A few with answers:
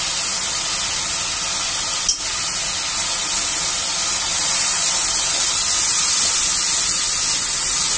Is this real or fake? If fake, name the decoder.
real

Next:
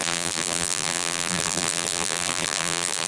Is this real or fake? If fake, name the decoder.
fake, vocoder, BigVGAN v2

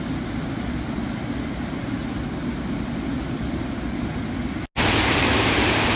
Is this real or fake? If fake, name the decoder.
real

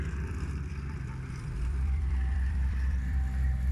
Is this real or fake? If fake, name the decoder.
fake, vocoder, BigVGAN v2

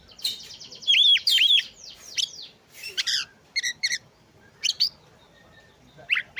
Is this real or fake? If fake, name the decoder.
fake, vocoder, BigVGAN v2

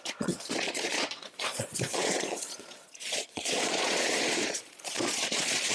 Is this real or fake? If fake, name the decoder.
fake, vocoder, Vocos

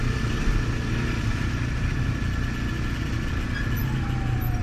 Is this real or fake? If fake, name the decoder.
real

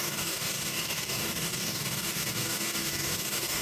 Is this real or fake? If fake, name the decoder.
fake, codec, DAC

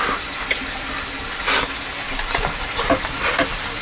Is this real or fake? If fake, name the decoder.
real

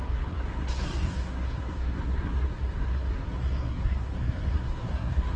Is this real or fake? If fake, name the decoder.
fake, codec, SNAC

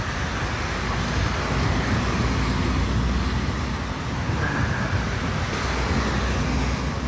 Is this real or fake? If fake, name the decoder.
real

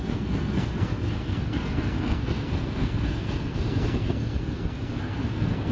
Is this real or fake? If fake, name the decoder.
fake, codec, SNAC